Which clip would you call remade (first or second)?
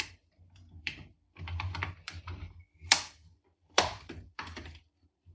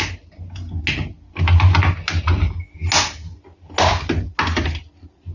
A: first